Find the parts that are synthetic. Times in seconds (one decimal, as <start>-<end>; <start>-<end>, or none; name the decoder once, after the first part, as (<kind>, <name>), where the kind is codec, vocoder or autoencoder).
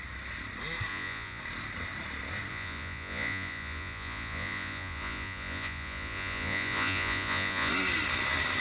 0.9-1.4 (vocoder, Vocos); 2.5-7.7